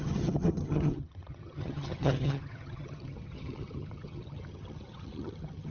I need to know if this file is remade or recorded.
remade